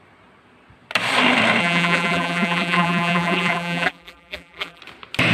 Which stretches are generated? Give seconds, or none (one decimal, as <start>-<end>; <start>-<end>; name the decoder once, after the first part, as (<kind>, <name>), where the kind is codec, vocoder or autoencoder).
1.6-4.8 (vocoder, BigVGAN v2)